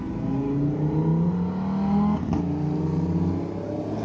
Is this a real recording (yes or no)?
yes